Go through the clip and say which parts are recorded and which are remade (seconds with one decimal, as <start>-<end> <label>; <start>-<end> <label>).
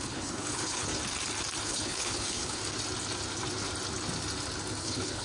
0.0-0.9 remade; 0.9-1.6 recorded; 1.6-2.6 remade; 2.6-4.8 recorded; 4.8-5.2 remade